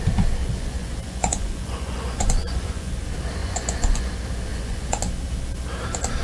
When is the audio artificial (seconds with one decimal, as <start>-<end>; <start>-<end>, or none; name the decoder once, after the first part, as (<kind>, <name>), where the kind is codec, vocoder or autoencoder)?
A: 0.4-2.9 (vocoder, Vocos); 3.4-4.1; 4.5-5.0